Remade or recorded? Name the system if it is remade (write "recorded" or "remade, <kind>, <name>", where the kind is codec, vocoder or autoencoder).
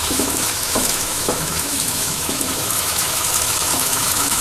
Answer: remade, autoencoder, DAC-VAE